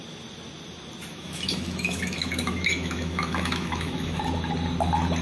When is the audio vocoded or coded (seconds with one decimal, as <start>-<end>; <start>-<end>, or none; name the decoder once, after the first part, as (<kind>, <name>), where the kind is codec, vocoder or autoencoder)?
1.1-4.2 (autoencoder, DAC-VAE)